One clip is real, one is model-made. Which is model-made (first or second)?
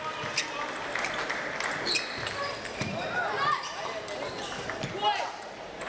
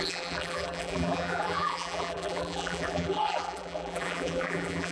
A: second